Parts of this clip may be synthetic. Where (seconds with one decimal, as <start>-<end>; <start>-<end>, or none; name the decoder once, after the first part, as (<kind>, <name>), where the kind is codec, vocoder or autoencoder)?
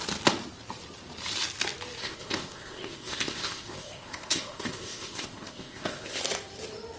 2.0-6.2 (codec, ZipCodec)